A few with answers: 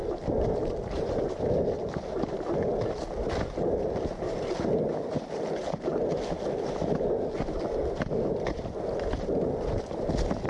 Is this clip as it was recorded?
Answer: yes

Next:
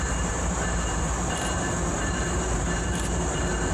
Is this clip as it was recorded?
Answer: no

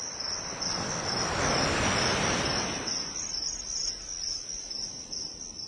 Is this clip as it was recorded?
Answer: yes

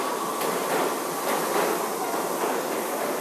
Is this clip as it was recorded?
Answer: yes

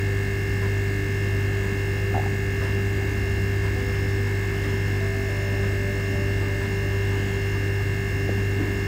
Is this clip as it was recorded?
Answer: yes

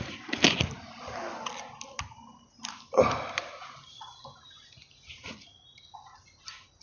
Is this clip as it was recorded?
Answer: yes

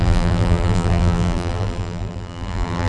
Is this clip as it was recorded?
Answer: no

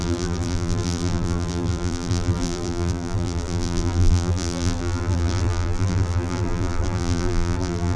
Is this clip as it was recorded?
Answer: no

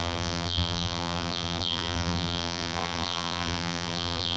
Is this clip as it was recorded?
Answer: no